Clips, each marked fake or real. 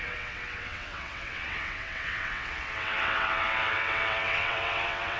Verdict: fake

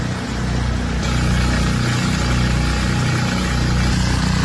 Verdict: real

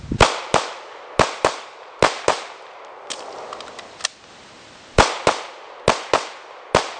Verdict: real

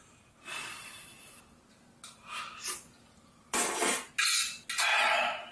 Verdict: real